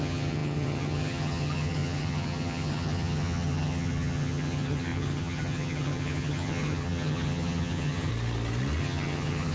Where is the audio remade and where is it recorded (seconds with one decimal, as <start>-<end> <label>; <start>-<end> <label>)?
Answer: 0.0-8.1 remade; 8.1-8.8 recorded; 8.8-9.5 remade